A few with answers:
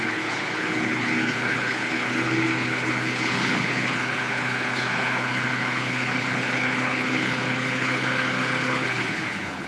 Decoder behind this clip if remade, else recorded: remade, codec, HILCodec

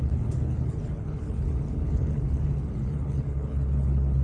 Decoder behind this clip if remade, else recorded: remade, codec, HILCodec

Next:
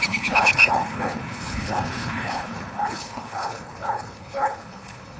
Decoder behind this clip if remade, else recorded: remade, codec, HILCodec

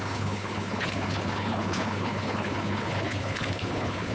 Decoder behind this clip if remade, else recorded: remade, codec, HILCodec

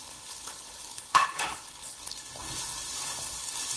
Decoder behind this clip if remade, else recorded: remade, codec, HILCodec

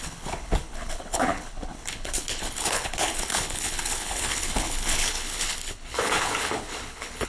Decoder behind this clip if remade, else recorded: remade, codec, HILCodec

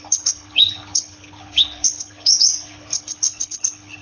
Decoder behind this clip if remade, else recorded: remade, codec, HILCodec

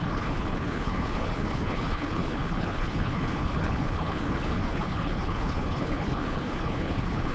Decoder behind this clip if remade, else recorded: remade, codec, HILCodec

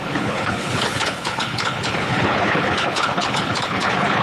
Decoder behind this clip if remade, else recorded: remade, codec, HILCodec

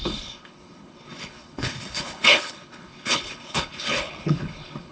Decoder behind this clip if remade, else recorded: remade, codec, HILCodec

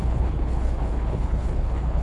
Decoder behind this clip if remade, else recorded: remade, codec, HILCodec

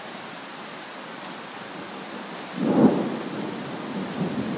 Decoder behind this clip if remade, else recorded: recorded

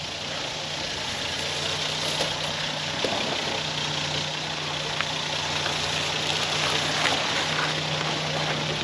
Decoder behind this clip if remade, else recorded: recorded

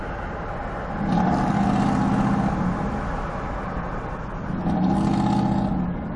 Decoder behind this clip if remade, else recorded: recorded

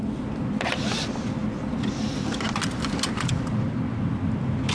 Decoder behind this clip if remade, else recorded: recorded